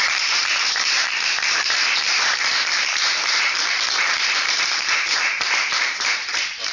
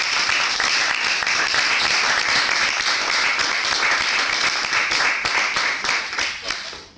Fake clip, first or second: first